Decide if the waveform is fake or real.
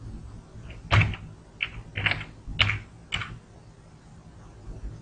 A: real